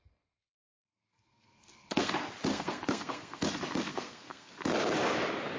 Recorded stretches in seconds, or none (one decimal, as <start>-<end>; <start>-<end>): 0.0-0.9; 2.1-2.5; 3.4-3.9; 4.5-5.6

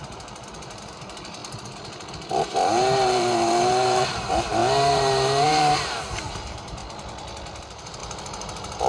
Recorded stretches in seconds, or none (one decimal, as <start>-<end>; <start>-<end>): 1.4-2.1; 6.8-7.6